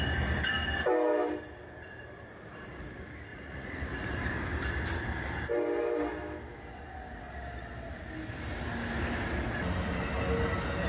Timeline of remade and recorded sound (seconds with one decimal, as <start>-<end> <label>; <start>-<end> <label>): 0.0-3.3 recorded; 3.3-3.8 remade; 3.8-10.9 recorded